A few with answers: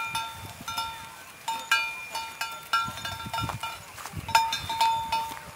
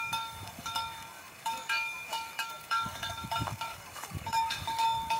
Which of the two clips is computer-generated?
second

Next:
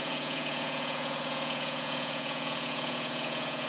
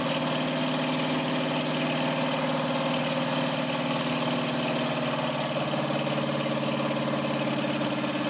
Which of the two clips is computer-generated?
first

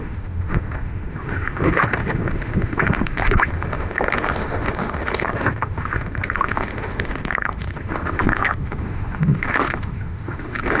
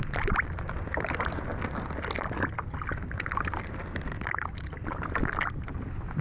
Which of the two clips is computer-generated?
first